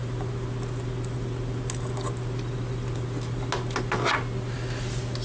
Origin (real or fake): real